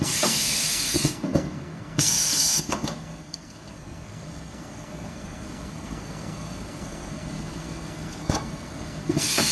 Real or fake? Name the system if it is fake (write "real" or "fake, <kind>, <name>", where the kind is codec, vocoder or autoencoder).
fake, codec, SNAC